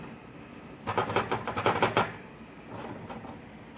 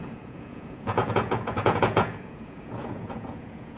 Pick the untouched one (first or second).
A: first